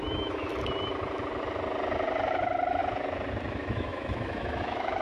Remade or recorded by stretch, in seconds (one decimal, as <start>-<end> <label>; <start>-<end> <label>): 0.0-0.5 remade; 0.5-2.3 recorded; 2.3-2.8 remade; 2.8-3.5 recorded; 3.5-5.0 remade